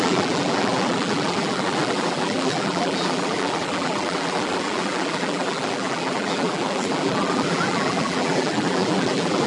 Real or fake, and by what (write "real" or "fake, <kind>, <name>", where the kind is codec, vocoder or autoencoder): fake, vocoder, BigVGAN v2